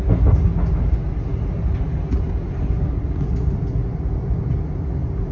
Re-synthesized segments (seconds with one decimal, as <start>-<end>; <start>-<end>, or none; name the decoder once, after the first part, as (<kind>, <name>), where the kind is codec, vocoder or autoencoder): none